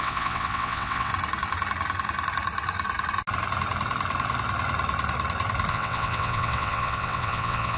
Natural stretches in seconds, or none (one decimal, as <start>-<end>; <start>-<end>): 1.1-5.7